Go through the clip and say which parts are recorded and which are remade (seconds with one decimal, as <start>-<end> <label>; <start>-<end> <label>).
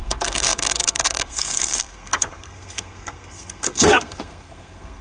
0.0-5.0 remade